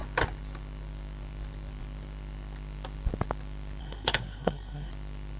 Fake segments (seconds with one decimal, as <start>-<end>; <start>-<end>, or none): 3.8-4.9